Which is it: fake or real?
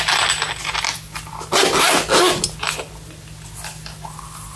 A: real